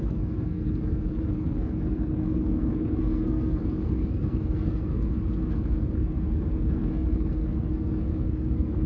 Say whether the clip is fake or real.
fake